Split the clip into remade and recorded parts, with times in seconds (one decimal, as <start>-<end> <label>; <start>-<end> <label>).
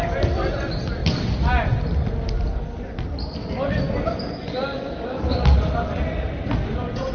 0.0-7.1 recorded